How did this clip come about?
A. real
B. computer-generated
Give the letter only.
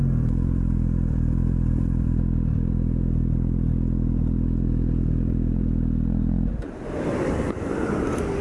B